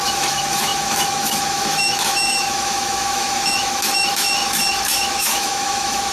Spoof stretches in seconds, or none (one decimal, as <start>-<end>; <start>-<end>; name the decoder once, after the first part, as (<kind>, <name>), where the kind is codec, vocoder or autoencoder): 0.0-6.1 (autoencoder, DAC-VAE)